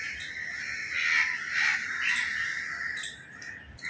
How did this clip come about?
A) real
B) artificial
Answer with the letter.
A